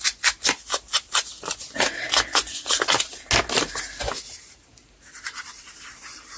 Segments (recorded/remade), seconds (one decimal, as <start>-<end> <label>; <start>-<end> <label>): 0.0-6.4 recorded